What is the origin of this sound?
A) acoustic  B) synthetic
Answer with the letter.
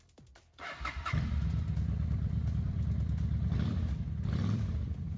B